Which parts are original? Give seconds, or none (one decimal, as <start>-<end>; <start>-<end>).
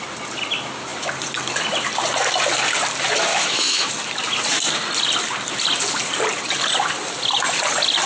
0.0-3.3; 3.9-8.1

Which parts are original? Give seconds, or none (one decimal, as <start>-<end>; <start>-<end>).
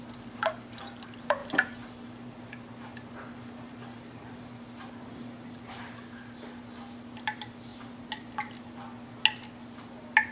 0.0-1.4; 4.4-10.3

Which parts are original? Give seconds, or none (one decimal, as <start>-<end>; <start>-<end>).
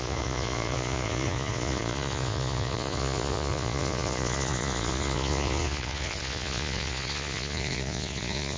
none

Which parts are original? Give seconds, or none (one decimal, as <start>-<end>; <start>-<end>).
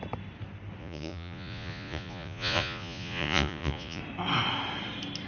0.0-0.8; 4.0-5.3